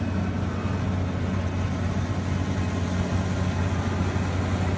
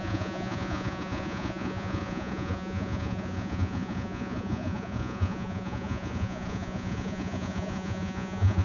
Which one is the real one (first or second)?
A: first